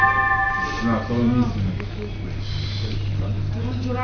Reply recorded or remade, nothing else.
recorded